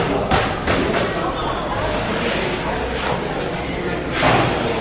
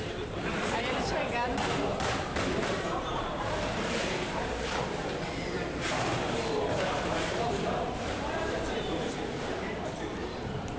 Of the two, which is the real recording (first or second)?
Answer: first